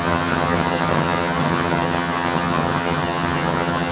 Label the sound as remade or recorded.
remade